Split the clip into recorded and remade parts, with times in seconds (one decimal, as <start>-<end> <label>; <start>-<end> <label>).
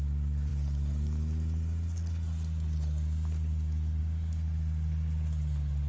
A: 0.0-5.9 recorded